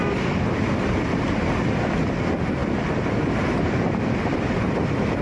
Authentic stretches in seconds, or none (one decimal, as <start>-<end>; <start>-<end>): 0.0-5.2